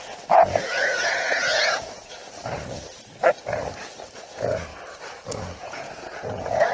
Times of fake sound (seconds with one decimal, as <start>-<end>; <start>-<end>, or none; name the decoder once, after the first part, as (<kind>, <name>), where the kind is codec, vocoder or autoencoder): 0.0-2.2 (vocoder, Vocos); 4.2-4.7; 5.6-6.7